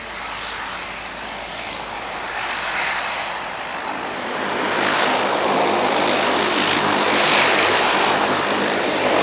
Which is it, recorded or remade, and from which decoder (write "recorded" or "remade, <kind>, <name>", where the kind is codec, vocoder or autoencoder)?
recorded